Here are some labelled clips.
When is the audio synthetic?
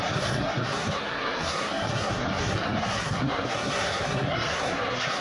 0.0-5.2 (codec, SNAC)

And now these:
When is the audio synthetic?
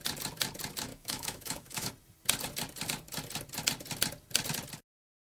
0.9-1.9 (autoencoder, DAC-VAE)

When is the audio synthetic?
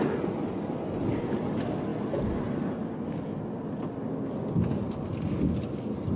none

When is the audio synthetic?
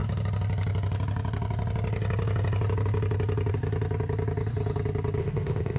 5.2-5.8 (codec, ZipCodec)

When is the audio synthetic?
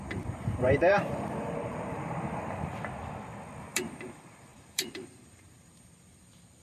0.0-2.8 (vocoder, BigVGAN v2); 3.6-6.6